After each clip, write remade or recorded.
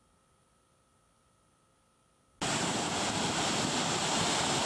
recorded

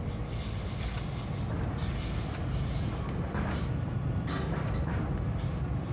recorded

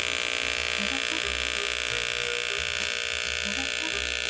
recorded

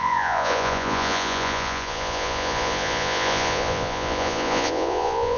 remade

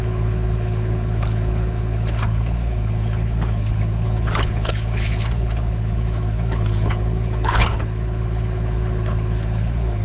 remade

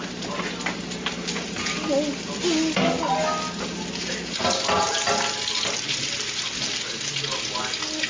recorded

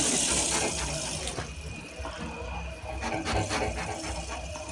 recorded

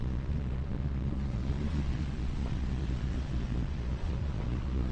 remade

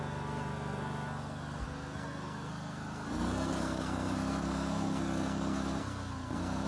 remade